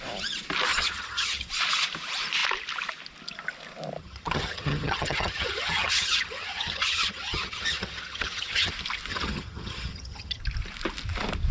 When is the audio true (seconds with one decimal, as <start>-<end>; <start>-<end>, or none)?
0.0-0.7; 1.5-4.0; 8.7-9.1; 10.4-11.5

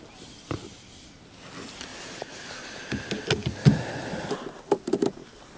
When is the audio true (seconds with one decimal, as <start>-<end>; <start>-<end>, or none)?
0.0-1.9; 2.5-5.6